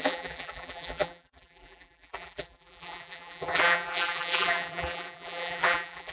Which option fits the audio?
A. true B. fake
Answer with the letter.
B